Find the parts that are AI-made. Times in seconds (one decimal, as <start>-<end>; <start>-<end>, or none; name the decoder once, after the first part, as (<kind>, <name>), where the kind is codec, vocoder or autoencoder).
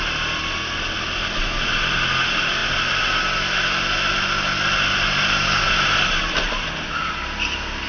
none